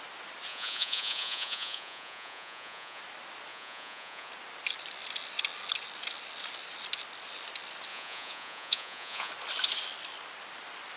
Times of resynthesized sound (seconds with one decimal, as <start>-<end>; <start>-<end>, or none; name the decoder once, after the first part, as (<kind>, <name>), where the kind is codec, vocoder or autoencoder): 0.5-3.0 (vocoder, Vocos); 3.5-4.3; 7.9-9.3